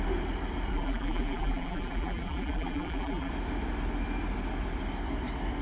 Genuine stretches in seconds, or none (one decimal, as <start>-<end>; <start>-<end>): 0.0-0.7; 3.3-5.6